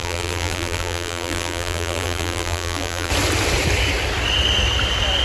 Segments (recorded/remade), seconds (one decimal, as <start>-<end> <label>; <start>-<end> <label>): 0.0-3.1 remade; 3.1-5.2 recorded